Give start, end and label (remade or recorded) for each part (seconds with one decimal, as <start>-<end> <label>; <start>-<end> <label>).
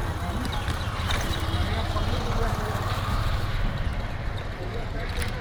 0.0-5.4 remade